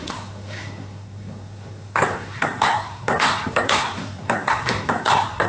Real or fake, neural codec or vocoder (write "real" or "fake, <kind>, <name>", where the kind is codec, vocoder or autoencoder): fake, codec, SNAC